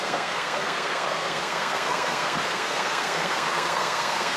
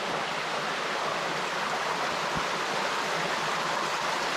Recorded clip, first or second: second